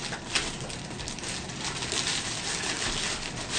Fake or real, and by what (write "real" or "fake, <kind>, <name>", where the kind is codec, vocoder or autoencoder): real